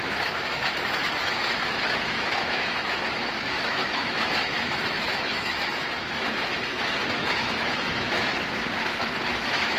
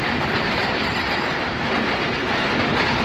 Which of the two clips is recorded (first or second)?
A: second